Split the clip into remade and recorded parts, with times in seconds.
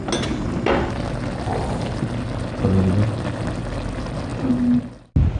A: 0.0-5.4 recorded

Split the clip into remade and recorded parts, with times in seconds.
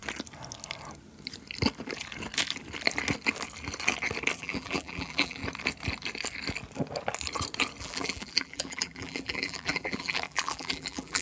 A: 0.0-4.4 recorded; 4.4-5.4 remade; 5.4-7.8 recorded; 7.8-11.2 remade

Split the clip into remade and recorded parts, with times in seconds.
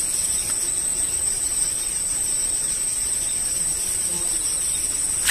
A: 0.0-0.9 recorded; 0.9-4.1 remade; 4.1-5.3 recorded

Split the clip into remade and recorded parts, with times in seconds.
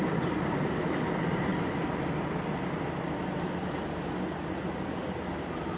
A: 0.0-5.8 recorded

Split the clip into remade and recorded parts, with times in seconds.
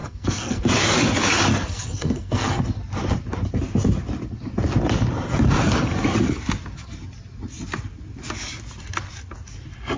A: 0.0-0.6 remade; 0.6-1.5 recorded; 1.5-2.6 remade; 2.6-10.0 recorded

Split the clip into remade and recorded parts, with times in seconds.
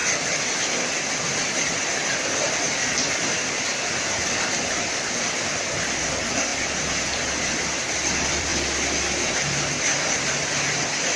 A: 0.0-1.2 recorded; 1.2-6.5 remade; 6.5-7.8 recorded; 7.8-8.5 remade; 8.5-11.2 recorded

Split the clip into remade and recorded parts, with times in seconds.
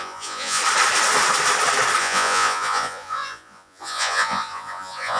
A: 0.0-0.6 remade; 0.6-2.0 recorded; 2.0-5.2 remade